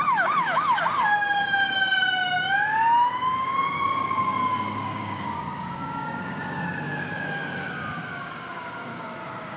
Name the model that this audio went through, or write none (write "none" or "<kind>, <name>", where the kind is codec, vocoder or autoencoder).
codec, DAC